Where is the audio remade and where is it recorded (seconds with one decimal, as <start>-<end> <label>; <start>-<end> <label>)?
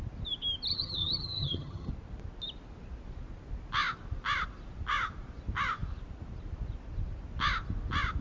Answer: 0.0-0.7 recorded; 0.7-1.9 remade; 1.9-8.2 recorded